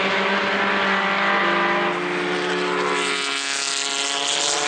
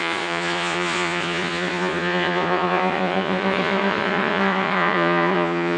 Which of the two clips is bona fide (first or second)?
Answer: first